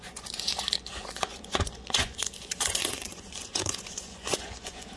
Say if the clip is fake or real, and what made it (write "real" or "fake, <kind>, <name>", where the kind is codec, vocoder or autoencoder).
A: fake, vocoder, Vocos